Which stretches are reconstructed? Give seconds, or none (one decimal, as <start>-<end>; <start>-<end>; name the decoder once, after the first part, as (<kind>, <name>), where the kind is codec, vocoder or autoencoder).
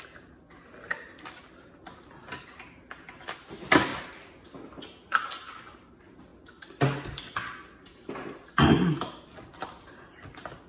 0.0-3.9 (vocoder, BigVGAN v2); 5.5-6.3; 9.2-10.7